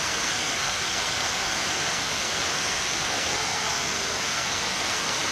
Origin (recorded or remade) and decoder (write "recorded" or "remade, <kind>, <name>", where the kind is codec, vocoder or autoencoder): remade, codec, SNAC